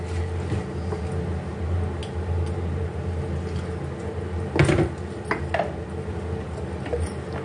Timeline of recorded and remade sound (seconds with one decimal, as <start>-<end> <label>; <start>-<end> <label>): 0.0-7.4 recorded

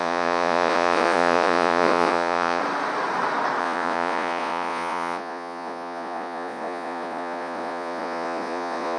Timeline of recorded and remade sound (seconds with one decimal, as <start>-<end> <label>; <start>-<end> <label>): 0.0-2.6 remade; 2.6-3.6 recorded; 3.6-9.0 remade

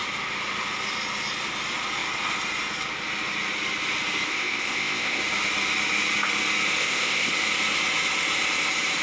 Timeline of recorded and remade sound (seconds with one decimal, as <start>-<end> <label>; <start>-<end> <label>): 0.0-4.3 recorded; 4.3-5.2 remade; 5.2-6.8 recorded; 6.8-7.3 remade; 7.3-9.0 recorded